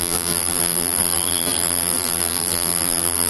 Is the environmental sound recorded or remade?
remade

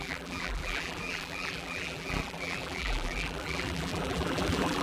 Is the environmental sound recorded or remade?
remade